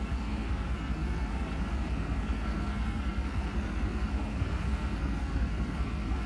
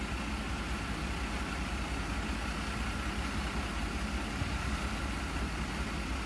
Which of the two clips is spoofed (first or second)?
first